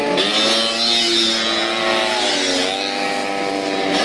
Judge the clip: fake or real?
real